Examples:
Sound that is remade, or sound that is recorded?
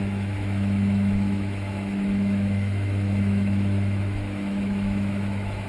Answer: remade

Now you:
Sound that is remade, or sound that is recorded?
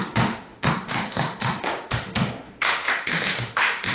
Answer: remade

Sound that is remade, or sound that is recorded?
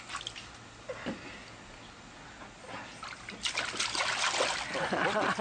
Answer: recorded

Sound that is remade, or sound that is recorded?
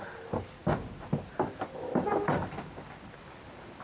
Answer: recorded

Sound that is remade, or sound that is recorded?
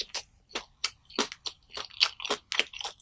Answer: recorded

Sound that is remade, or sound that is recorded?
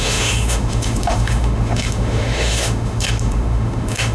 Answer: remade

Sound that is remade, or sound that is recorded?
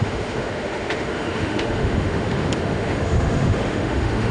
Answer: remade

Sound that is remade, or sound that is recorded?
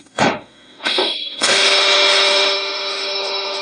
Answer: remade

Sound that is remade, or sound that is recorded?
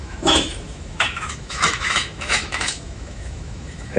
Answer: remade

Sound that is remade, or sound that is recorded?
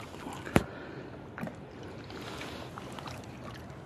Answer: recorded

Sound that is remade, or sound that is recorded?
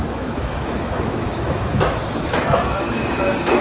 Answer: remade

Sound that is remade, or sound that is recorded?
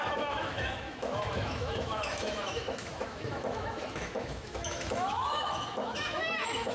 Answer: remade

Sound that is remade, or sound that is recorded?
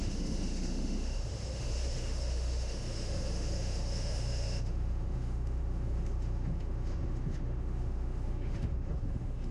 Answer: remade